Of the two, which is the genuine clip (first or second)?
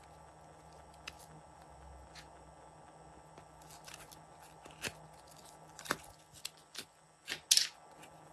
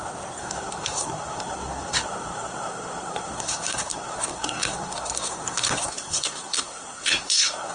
first